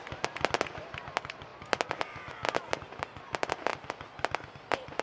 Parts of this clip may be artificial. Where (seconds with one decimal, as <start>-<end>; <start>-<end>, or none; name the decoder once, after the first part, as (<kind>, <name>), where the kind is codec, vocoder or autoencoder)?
none